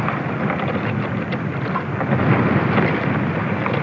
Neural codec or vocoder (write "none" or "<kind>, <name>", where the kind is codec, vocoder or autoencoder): none